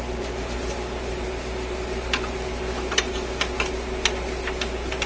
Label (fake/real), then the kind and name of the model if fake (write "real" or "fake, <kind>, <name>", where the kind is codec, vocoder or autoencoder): real